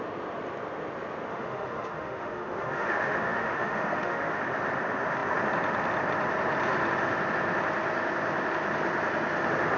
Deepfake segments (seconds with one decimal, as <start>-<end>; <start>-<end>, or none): 1.3-4.4